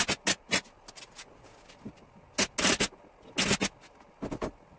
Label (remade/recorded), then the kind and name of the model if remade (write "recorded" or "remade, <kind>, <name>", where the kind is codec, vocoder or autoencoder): recorded